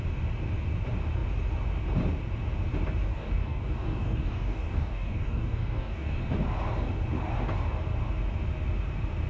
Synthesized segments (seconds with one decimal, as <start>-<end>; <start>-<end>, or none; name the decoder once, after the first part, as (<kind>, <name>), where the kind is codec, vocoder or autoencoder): 3.1-6.2 (codec, DAC)

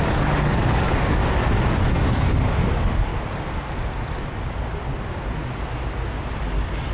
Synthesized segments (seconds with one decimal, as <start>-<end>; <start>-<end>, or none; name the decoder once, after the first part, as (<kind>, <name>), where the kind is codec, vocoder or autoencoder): 0.0-1.2 (codec, DAC); 1.8-3.1; 6.4-6.9

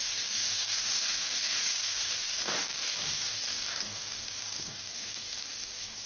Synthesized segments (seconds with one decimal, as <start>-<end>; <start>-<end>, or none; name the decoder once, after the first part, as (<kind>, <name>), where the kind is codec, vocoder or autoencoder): 0.0-6.1 (codec, DAC)